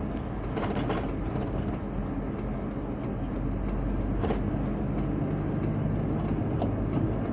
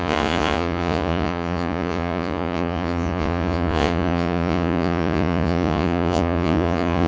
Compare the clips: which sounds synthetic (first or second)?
second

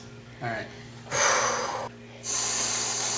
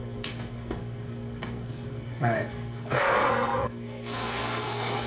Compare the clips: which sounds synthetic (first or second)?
second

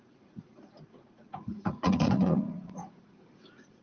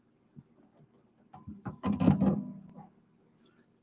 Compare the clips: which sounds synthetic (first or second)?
first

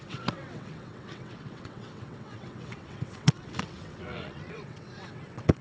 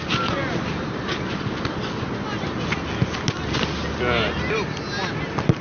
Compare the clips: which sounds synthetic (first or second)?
first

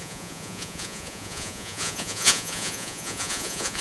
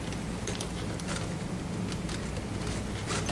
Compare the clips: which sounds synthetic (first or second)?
first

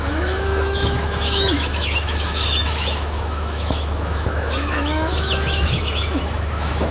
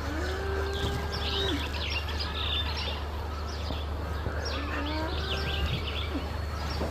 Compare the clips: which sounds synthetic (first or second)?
first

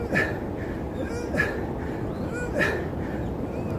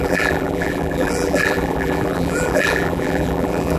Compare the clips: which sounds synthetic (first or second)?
second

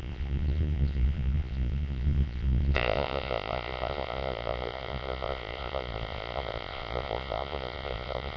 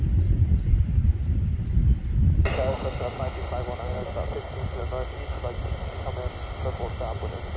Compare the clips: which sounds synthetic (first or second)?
first